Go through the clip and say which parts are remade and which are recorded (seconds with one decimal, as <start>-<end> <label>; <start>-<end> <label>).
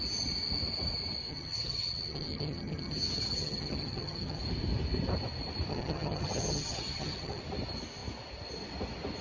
0.0-1.3 recorded; 1.3-4.4 remade; 4.4-5.7 recorded; 5.7-7.4 remade; 7.4-9.2 recorded